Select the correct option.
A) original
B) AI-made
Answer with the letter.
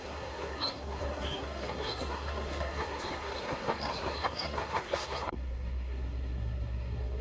B